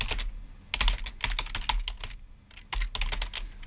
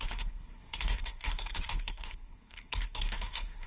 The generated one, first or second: second